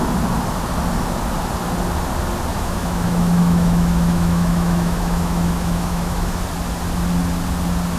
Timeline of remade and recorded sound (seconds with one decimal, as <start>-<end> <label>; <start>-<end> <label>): 0.0-2.5 recorded; 2.5-6.4 remade; 6.4-8.0 recorded

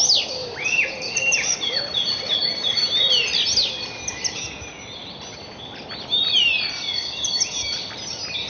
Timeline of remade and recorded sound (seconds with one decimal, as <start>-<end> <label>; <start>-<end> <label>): 0.0-0.4 recorded; 0.4-1.8 remade; 1.8-8.5 recorded

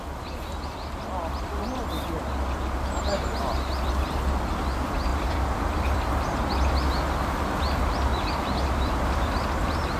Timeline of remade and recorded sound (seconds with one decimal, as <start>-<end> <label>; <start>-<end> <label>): 0.0-5.1 recorded; 5.1-6.1 remade; 6.1-8.1 recorded; 8.1-8.9 remade; 8.9-10.0 recorded

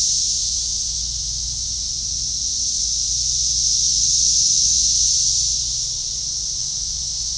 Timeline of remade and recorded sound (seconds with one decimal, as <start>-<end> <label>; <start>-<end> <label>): 0.0-0.4 recorded; 0.4-1.9 remade; 1.9-3.9 recorded; 3.9-4.8 remade; 4.8-6.6 recorded; 6.6-7.4 remade